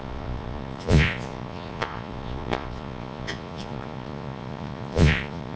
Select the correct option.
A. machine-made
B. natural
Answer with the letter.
A